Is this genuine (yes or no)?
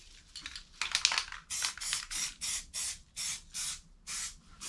yes